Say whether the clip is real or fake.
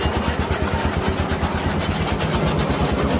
real